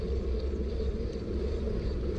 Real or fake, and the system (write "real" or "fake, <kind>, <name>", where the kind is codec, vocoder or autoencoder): fake, vocoder, BigVGAN v2